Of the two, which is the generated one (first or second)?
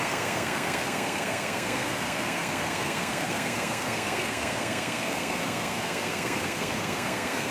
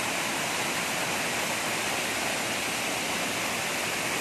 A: first